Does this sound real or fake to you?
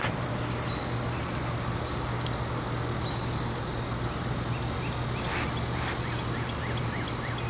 real